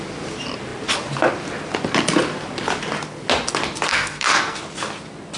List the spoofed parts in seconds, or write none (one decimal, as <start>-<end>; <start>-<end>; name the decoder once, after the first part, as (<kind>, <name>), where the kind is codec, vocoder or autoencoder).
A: 3.9-4.6 (codec, SNAC)